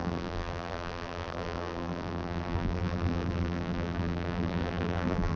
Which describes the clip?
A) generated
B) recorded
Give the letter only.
A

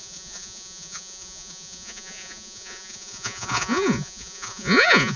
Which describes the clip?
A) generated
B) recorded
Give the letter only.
A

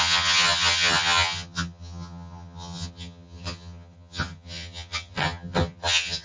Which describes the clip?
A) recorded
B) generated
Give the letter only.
B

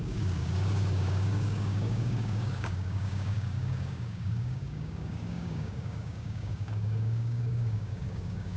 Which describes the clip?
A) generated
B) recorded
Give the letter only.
A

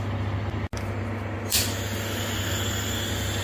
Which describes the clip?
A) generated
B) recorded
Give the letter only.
B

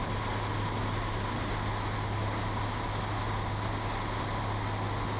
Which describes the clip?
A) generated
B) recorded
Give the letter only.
B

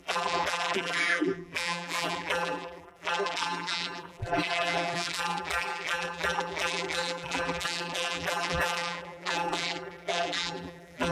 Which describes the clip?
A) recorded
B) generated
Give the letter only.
B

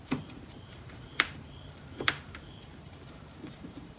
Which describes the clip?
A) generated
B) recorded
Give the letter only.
A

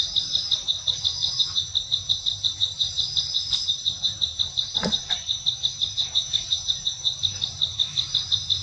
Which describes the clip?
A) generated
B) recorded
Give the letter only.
A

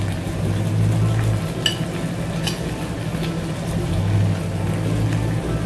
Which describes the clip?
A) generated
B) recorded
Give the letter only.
B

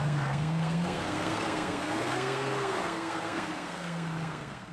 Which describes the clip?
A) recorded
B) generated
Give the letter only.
B